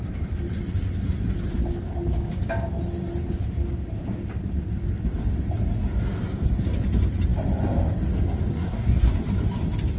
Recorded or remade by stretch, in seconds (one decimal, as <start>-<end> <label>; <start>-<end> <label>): 0.0-8.5 recorded; 8.5-9.1 remade; 9.1-10.0 recorded